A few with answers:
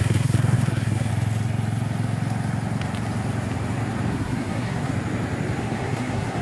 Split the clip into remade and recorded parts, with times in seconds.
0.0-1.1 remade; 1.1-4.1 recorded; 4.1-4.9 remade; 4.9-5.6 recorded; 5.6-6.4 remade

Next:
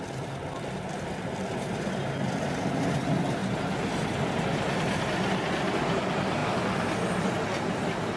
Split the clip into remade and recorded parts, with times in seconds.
0.0-8.2 recorded

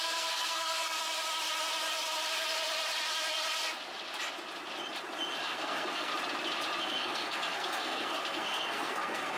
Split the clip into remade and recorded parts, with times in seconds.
0.0-1.0 remade; 1.0-5.4 recorded; 5.4-6.1 remade; 6.1-6.8 recorded; 6.8-9.4 remade

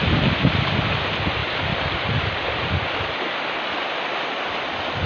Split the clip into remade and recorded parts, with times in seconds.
0.0-5.1 recorded

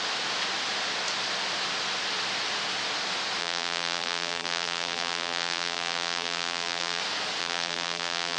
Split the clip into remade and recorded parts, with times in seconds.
0.0-3.4 recorded; 3.4-7.0 remade; 7.0-7.4 recorded; 7.4-8.4 remade

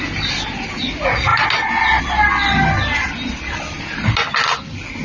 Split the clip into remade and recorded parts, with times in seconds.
0.0-5.0 recorded

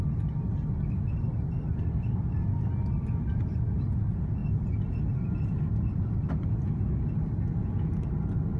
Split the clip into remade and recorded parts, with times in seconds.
0.0-8.6 recorded

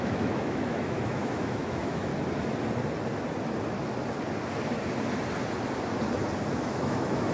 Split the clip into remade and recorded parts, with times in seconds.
0.0-2.1 remade; 2.1-6.5 recorded; 6.5-7.3 remade